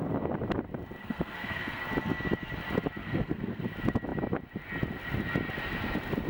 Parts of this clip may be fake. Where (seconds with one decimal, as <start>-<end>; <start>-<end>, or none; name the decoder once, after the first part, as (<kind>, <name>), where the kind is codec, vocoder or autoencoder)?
1.0-1.8 (codec, SNAC); 3.0-3.6